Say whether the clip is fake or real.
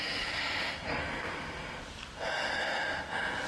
fake